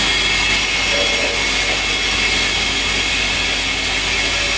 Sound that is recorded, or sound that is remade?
recorded